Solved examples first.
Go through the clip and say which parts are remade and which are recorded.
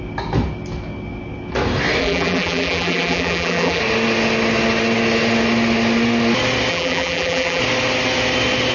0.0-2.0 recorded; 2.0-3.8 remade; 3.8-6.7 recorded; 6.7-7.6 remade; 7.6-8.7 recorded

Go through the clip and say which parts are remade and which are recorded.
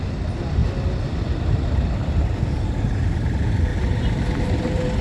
0.0-0.6 remade; 0.6-2.8 recorded; 2.8-5.0 remade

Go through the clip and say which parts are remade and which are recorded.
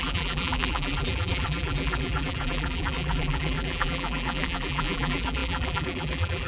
0.0-6.5 remade